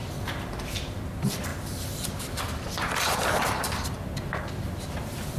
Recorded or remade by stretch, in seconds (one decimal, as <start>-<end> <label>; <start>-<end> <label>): 0.0-5.4 recorded